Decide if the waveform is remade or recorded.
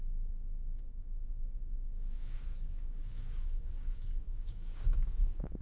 remade